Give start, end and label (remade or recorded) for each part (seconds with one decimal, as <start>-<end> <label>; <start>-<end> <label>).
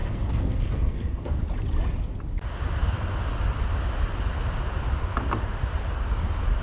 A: 0.0-1.4 remade; 1.4-6.6 recorded